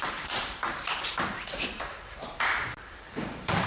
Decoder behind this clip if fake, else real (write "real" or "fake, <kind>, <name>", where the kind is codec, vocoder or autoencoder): fake, vocoder, BigVGAN v2